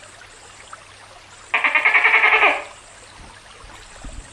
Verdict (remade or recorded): recorded